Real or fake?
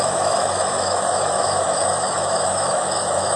fake